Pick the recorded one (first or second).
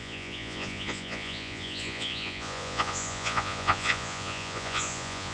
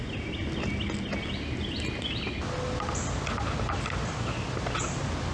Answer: second